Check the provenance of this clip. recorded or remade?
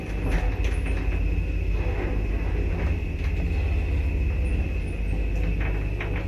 recorded